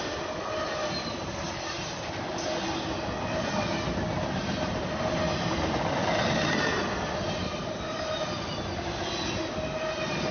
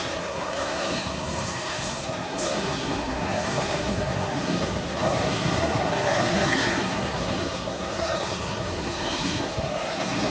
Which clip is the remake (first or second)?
second